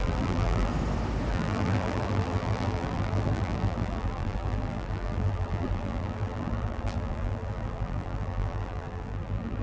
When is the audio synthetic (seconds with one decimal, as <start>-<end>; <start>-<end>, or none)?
0.0-0.7; 1.3-9.6